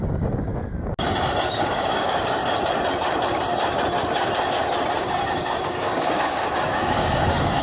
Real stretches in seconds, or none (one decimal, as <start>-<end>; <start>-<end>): 0.5-1.4; 2.4-5.0